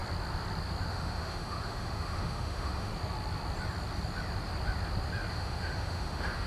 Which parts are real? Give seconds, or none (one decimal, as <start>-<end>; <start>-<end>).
0.0-0.9; 2.9-5.3